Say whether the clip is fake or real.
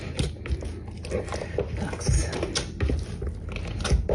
real